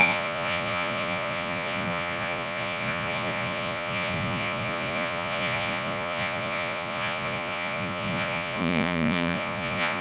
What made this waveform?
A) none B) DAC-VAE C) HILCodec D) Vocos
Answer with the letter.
D